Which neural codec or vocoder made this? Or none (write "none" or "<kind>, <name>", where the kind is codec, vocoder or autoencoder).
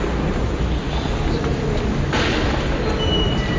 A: none